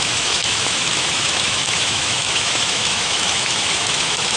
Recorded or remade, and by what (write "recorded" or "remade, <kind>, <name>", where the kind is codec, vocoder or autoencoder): remade, autoencoder, DAC-VAE